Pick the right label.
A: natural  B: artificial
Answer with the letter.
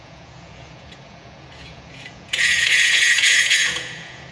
B